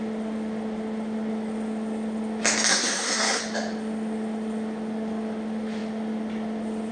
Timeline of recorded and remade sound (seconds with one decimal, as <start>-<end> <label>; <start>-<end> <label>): 0.0-2.7 recorded; 2.7-3.4 remade; 3.4-6.9 recorded